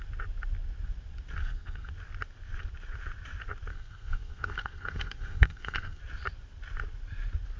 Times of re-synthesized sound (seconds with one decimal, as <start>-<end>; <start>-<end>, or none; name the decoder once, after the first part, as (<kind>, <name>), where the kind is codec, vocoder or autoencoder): 1.4-1.9 (codec, SNAC); 3.7-6.0